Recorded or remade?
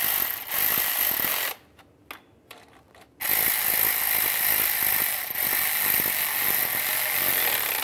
recorded